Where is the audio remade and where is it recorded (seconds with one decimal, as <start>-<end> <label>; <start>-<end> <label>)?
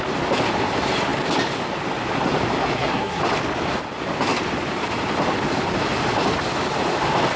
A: 0.0-2.6 recorded; 2.6-3.2 remade; 3.2-7.4 recorded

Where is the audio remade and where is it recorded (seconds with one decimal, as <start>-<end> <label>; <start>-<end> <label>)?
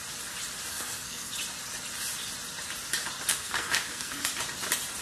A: 0.0-0.7 recorded; 0.7-1.3 remade; 1.3-3.3 recorded; 3.3-4.3 remade; 4.3-5.0 recorded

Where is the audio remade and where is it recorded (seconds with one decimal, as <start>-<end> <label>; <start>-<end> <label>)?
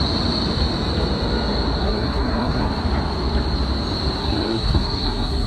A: 0.0-1.8 recorded; 1.8-2.7 remade; 2.7-4.2 recorded; 4.2-5.5 remade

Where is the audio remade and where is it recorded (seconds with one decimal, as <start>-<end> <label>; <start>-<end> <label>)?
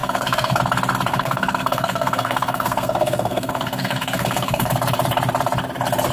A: 0.0-0.6 remade; 0.6-1.1 recorded; 1.1-4.7 remade; 4.7-6.1 recorded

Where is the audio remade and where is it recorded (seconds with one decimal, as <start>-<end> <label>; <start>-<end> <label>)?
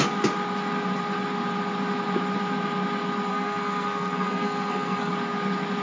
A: 0.0-3.3 recorded; 3.3-5.1 remade; 5.1-5.8 recorded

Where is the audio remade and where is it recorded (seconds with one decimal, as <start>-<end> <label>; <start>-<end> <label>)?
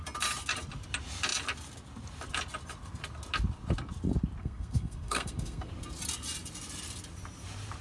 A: 0.0-4.4 recorded; 4.4-5.7 remade; 5.7-7.8 recorded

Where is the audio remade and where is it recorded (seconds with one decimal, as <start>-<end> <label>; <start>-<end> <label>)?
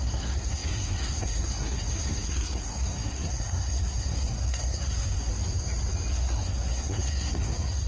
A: 0.0-5.3 remade; 5.3-6.1 recorded; 6.1-7.9 remade